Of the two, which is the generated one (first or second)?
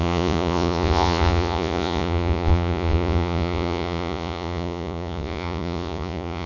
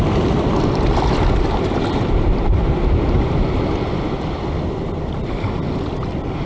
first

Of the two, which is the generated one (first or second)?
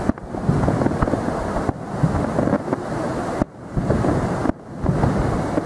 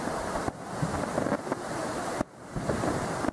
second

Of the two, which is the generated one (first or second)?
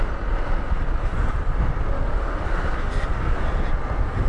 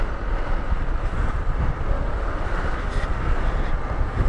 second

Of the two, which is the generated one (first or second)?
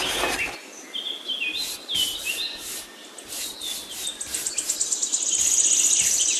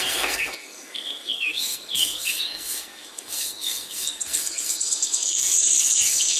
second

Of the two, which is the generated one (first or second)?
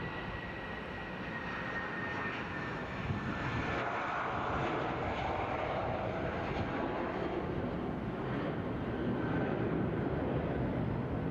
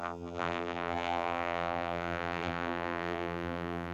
second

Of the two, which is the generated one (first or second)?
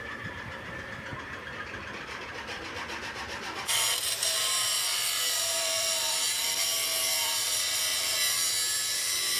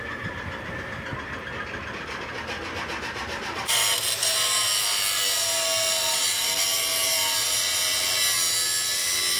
first